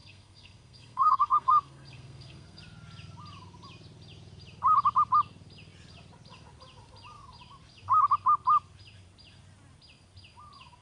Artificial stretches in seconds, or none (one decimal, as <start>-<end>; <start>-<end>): 0.0-2.6